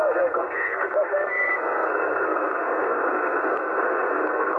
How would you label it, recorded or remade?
remade